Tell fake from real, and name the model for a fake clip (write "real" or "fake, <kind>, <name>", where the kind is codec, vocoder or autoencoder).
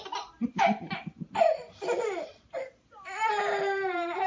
fake, vocoder, BigVGAN v2